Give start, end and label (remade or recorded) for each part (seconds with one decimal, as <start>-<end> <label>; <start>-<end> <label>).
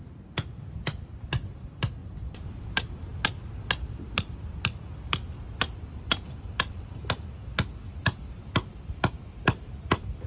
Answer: 0.0-3.1 remade; 3.1-3.6 recorded; 3.6-7.0 remade; 7.0-9.2 recorded; 9.2-10.3 remade